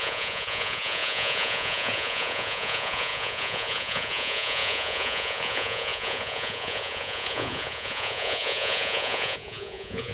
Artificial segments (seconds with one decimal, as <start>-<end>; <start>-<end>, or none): 0.0-10.1